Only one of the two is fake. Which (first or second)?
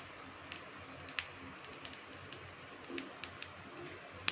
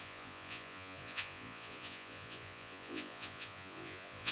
second